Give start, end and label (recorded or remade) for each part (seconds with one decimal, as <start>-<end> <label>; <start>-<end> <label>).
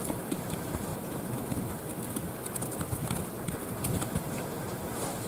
0.0-0.9 remade; 0.9-3.8 recorded; 3.8-5.3 remade